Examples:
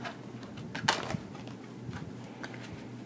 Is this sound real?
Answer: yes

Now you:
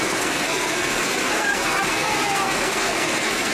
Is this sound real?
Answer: no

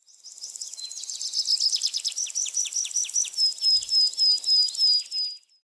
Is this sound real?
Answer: yes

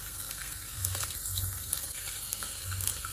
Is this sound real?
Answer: no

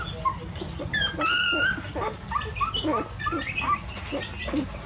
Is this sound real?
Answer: yes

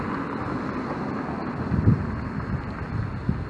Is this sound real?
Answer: yes